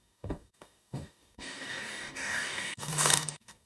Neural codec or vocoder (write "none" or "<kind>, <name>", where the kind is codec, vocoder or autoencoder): codec, DAC